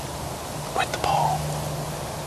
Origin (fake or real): real